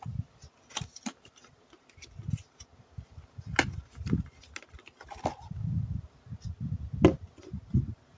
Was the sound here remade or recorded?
recorded